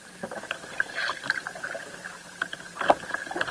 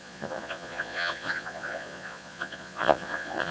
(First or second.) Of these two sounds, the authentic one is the first